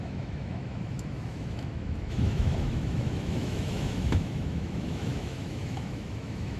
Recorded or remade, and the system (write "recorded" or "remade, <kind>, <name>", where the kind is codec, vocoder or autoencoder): remade, autoencoder, DAC-VAE